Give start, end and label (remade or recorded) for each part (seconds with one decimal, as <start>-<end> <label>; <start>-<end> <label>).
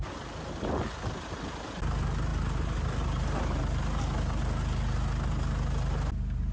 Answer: 0.0-6.5 recorded